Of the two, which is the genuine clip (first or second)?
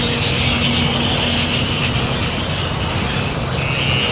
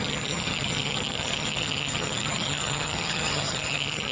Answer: first